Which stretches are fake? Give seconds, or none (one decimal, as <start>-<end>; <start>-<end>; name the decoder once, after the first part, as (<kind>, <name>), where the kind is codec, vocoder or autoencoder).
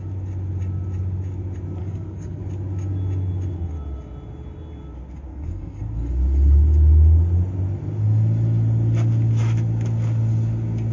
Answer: 1.8-2.4 (codec, SNAC); 5.3-5.8